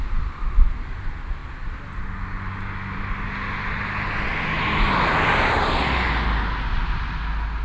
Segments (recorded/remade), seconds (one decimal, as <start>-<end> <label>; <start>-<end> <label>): 0.0-7.6 recorded